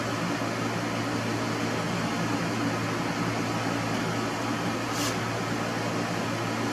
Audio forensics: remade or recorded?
recorded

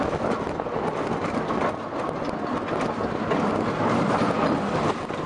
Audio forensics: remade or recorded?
recorded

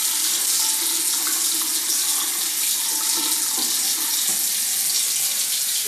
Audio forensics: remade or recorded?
recorded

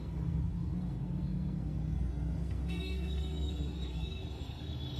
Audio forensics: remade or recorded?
remade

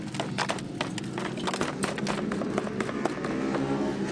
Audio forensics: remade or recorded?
recorded